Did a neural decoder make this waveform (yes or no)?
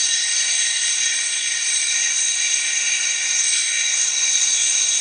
yes